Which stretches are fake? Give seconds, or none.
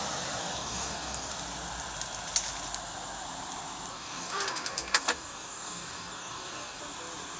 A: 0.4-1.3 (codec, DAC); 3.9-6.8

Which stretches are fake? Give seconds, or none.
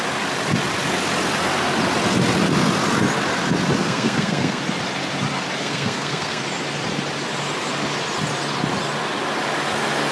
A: 3.8-4.6 (codec, SNAC); 5.6-6.4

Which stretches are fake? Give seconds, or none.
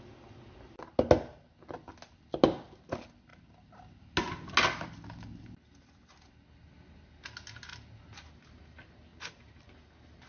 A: 9.1-9.6 (vocoder, BigVGAN v2)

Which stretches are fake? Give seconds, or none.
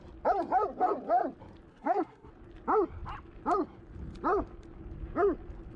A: 1.7-2.3 (codec, SNAC)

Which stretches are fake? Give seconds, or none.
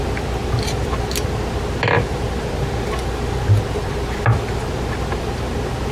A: none